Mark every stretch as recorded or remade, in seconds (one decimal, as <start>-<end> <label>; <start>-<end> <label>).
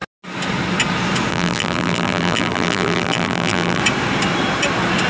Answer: 0.0-1.3 recorded; 1.3-3.8 remade; 3.8-5.1 recorded